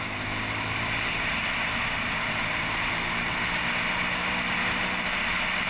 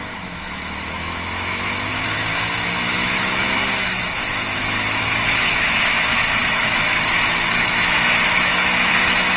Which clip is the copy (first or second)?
second